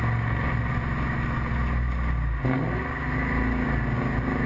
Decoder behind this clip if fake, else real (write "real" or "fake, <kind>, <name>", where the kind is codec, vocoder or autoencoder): real